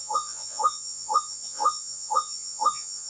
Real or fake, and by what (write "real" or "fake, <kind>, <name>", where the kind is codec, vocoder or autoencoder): fake, vocoder, Vocos